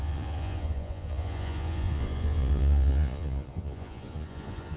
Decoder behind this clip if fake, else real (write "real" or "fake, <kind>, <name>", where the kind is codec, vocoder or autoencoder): fake, vocoder, Vocos